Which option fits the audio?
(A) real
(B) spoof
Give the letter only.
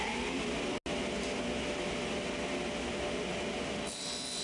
A